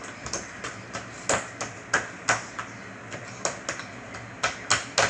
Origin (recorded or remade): recorded